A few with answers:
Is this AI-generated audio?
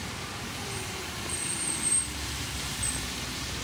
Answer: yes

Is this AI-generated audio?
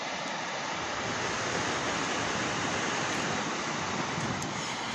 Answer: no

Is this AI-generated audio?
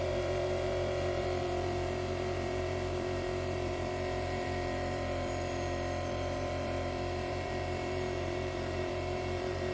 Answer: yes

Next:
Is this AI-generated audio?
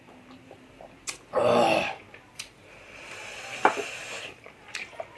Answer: yes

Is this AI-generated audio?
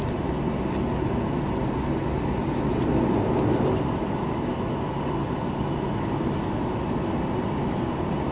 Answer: no